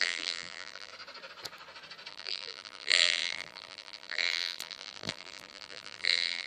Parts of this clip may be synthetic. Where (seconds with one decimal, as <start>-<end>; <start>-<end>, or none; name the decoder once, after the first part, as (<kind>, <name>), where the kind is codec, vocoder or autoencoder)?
0.0-0.9 (vocoder, BigVGAN v2); 2.1-6.5